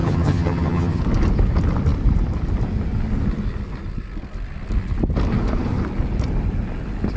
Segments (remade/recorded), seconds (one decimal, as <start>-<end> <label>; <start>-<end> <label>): 0.0-1.0 remade; 1.0-7.2 recorded